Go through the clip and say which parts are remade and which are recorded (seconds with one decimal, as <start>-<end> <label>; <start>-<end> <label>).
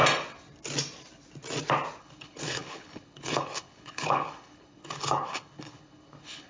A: 0.0-2.0 recorded; 2.0-6.5 remade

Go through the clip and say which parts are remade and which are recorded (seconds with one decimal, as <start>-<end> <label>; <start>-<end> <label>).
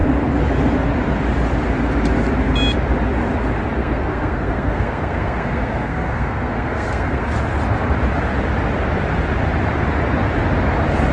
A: 0.0-3.8 recorded; 3.8-7.3 remade; 7.3-11.1 recorded